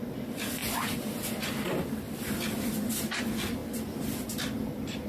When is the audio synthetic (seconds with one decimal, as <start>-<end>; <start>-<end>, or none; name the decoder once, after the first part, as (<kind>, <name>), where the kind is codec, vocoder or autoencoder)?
0.6-3.2 (vocoder, BigVGAN v2)